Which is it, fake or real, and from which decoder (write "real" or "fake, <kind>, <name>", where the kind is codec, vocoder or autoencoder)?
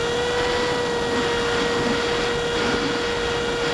real